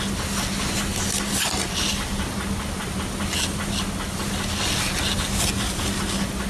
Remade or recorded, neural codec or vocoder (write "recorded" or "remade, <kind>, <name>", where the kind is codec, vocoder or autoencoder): recorded